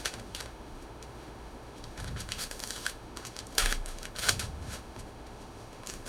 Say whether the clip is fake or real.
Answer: fake